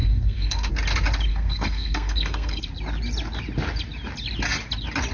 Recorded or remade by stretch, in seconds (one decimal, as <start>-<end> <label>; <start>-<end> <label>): 0.0-0.7 remade; 0.7-1.3 recorded; 1.3-2.6 remade; 2.6-5.1 recorded